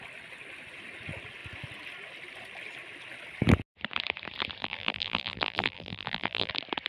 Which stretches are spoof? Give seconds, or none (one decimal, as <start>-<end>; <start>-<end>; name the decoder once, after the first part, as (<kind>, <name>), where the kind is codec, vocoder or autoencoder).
4.6-6.5 (vocoder, BigVGAN v2)